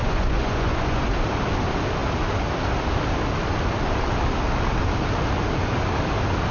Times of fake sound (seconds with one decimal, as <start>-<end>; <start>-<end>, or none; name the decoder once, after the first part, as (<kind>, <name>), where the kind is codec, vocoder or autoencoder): 0.0-1.0 (vocoder, Vocos)